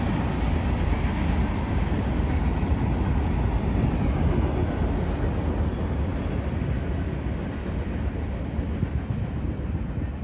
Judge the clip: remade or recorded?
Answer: recorded